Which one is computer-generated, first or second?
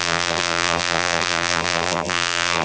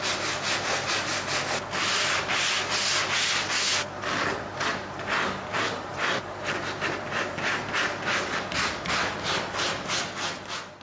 first